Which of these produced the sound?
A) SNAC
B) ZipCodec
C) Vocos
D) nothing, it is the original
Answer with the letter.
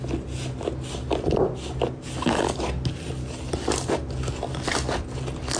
D